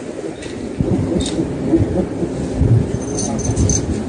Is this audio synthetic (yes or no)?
no